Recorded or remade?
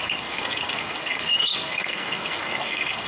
remade